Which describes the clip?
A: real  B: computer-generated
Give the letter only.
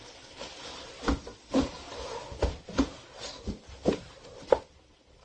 A